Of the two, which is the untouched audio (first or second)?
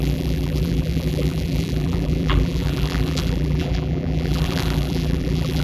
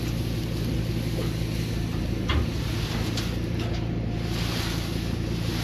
second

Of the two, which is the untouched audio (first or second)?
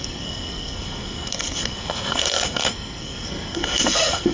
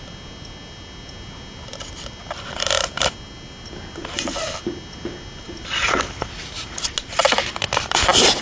second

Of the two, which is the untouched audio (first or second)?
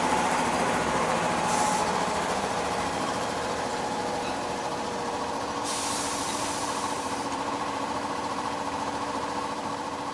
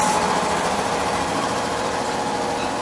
second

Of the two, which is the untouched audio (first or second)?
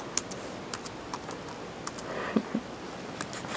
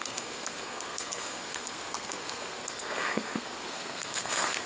first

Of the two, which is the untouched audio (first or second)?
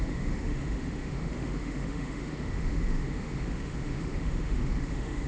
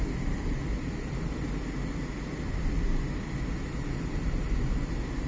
second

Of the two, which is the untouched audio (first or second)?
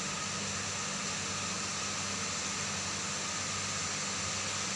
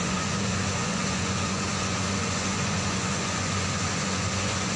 first